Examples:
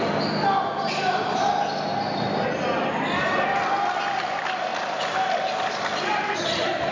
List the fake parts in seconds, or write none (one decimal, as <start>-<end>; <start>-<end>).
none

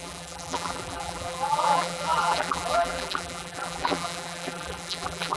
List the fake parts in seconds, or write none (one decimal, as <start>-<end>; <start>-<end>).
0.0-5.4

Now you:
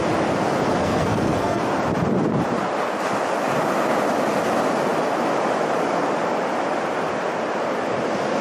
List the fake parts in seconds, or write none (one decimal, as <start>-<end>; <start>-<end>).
0.8-1.6